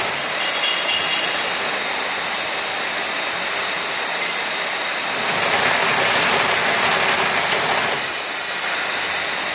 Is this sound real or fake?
real